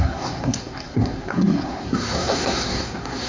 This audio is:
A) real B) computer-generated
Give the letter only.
B